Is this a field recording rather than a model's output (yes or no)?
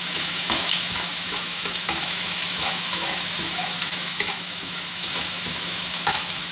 no